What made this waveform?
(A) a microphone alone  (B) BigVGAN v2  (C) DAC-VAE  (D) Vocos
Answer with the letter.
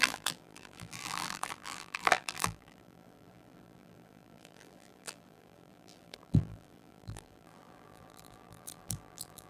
B